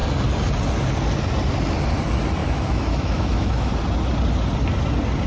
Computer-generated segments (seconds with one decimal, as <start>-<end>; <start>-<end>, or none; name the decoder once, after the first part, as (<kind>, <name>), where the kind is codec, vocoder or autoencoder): 2.4-3.7 (autoencoder, DAC-VAE)